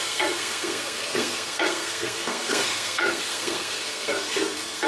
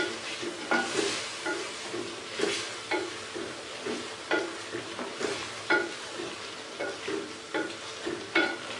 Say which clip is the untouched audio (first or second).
second